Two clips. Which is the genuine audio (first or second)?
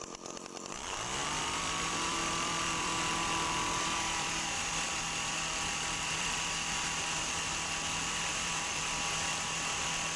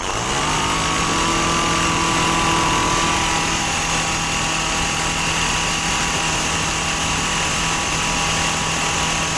second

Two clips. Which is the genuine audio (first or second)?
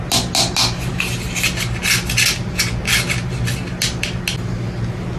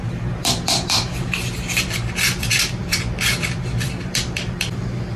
first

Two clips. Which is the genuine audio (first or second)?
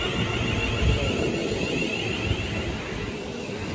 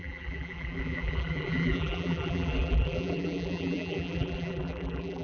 first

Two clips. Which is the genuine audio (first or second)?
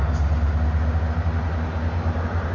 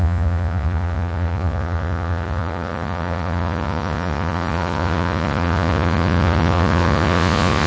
first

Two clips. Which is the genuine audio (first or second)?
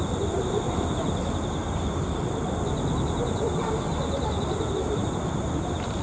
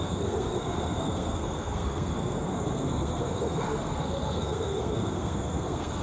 first